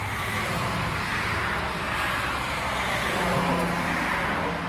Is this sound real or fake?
real